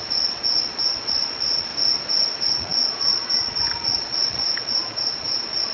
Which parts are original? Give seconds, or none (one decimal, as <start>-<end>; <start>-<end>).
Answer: 1.7-2.5